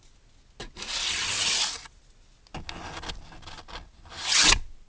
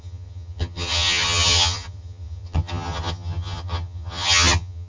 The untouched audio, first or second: first